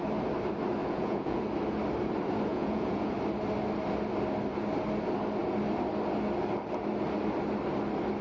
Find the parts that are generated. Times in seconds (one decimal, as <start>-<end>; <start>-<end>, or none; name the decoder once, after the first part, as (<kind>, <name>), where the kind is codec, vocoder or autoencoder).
0.8-1.4 (vocoder, Vocos); 2.5-3.1